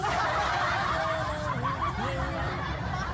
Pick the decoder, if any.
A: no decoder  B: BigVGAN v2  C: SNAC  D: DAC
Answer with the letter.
A